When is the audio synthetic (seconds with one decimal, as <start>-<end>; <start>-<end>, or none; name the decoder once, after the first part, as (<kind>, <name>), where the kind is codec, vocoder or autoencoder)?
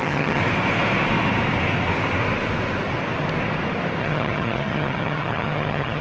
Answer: 0.0-0.4 (vocoder, HiFi-GAN); 4.0-6.0